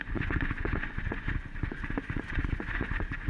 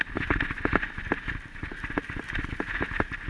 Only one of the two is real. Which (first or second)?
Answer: second